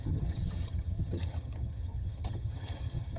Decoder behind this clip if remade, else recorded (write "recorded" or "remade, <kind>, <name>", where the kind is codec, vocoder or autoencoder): remade, vocoder, HiFi-GAN